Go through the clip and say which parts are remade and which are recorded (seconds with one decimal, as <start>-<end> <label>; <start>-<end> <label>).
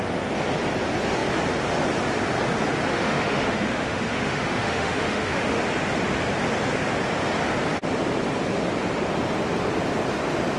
0.0-2.9 recorded; 2.9-5.6 remade; 5.6-10.6 recorded